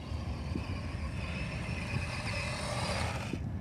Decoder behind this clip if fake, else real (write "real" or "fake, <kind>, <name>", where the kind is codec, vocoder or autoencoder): real